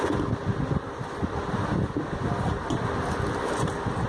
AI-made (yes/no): no